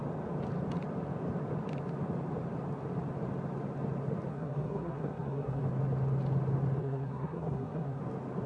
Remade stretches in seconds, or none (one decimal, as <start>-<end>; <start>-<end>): 4.3-5.6; 6.8-8.0